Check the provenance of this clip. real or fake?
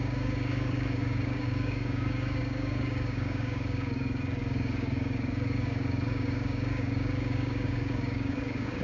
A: fake